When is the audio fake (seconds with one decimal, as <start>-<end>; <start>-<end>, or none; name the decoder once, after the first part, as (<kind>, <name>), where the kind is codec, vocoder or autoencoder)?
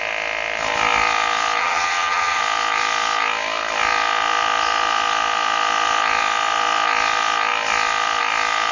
1.6-2.4 (vocoder, HiFi-GAN)